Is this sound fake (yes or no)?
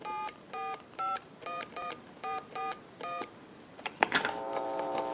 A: yes